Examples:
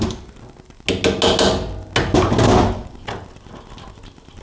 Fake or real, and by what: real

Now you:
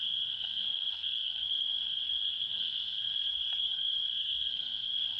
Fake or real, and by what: fake, codec, SNAC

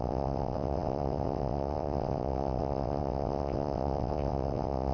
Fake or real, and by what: fake, vocoder, WaveNeXt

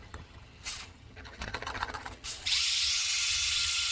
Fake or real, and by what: fake, vocoder, HiFi-GAN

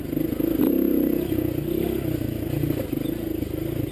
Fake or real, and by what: real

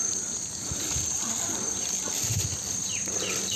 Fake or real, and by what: fake, vocoder, BigVGAN v2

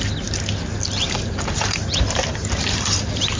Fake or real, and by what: real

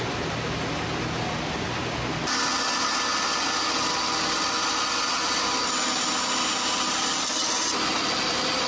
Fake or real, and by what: real